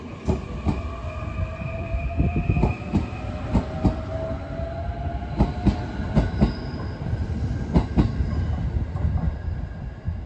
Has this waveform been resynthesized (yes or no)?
no